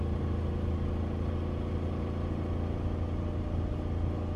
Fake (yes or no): no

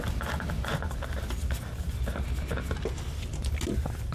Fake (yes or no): no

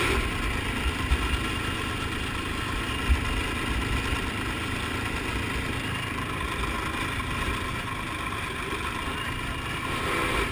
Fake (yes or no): yes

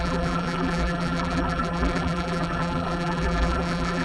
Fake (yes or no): yes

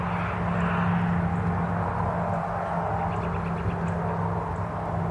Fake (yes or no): no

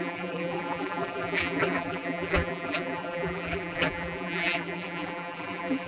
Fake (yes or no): yes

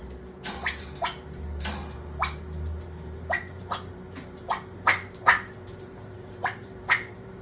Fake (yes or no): yes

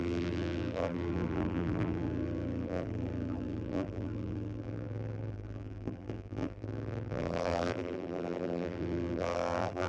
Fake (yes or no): yes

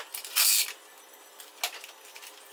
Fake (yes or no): no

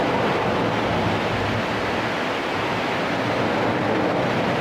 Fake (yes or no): no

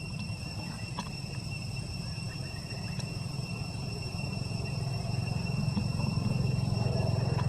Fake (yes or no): yes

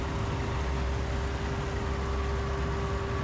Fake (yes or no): no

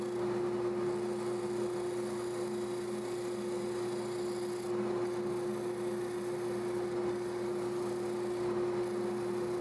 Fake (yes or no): no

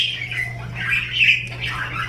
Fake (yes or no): no